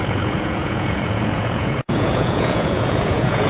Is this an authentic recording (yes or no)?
no